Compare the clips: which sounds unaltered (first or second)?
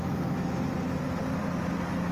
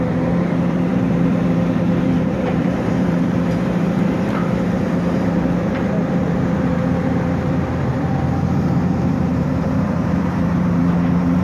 first